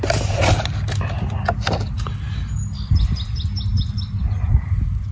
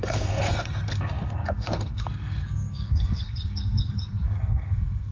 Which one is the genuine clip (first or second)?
first